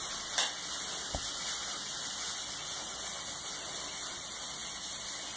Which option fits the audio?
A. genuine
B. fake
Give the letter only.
A